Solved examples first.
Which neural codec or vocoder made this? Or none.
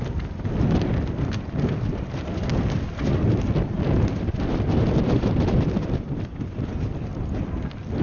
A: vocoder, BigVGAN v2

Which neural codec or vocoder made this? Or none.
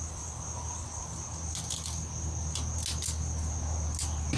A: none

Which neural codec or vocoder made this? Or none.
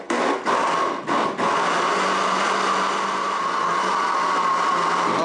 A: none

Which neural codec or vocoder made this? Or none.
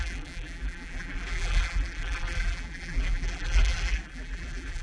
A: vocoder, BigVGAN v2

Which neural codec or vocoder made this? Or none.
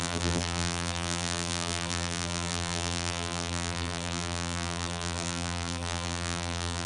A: vocoder, BigVGAN v2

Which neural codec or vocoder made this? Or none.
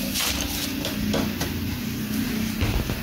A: none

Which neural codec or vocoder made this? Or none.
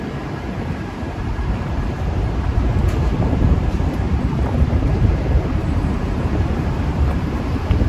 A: vocoder, BigVGAN v2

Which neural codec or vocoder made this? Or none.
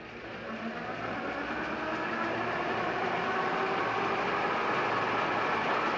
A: none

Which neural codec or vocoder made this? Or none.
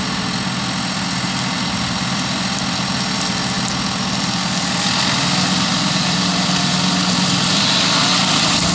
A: none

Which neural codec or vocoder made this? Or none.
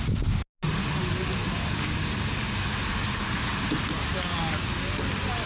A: none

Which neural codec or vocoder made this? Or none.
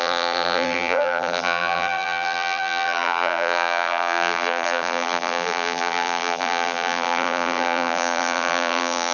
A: vocoder, BigVGAN v2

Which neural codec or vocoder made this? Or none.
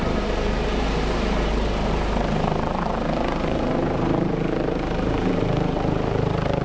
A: vocoder, BigVGAN v2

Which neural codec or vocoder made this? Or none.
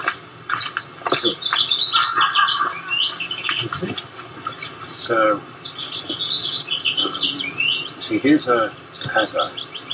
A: none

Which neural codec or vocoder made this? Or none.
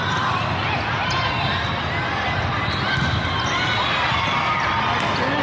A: none